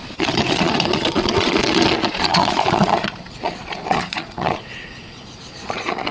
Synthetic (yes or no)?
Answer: yes